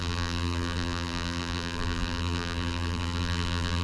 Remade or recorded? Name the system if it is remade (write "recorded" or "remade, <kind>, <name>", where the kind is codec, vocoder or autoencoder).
remade, vocoder, BigVGAN v2